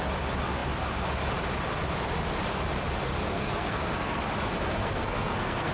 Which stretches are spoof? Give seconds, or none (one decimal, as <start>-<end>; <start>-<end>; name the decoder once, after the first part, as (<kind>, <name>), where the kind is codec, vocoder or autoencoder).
3.3-4.2 (codec, SNAC); 4.8-5.7